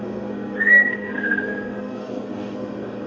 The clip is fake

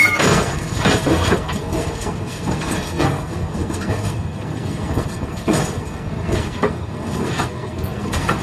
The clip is fake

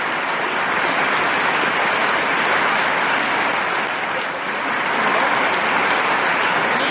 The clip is real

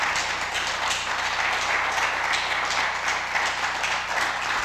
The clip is real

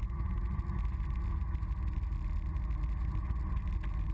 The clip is real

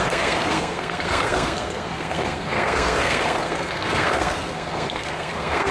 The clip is fake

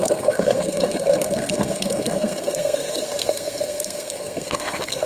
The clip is fake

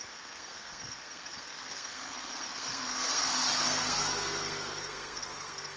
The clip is fake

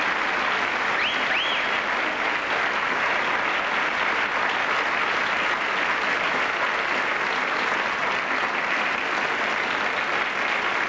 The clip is real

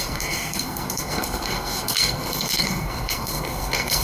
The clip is fake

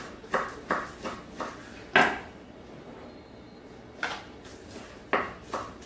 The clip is real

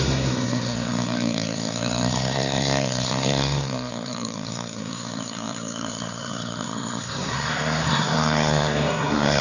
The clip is fake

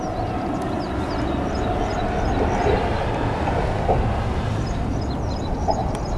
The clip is real